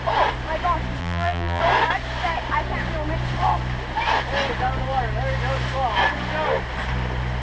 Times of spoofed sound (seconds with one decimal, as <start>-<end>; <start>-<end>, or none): 1.0-1.6